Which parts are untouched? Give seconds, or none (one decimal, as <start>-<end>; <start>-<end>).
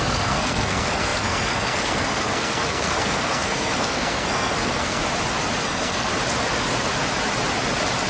5.0-5.6; 6.1-8.1